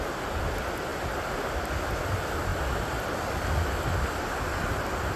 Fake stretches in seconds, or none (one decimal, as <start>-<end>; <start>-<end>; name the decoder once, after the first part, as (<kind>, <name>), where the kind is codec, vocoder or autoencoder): none